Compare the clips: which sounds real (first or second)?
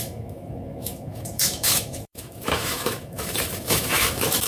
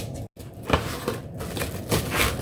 second